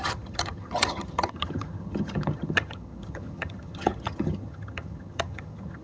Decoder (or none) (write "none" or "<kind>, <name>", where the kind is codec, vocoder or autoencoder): vocoder, HiFi-GAN